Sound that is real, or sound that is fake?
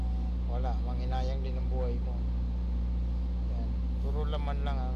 real